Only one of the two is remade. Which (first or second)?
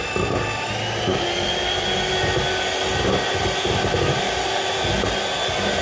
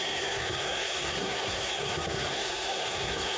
second